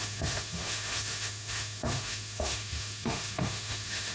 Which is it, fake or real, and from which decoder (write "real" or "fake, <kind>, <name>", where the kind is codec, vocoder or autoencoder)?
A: fake, autoencoder, DAC-VAE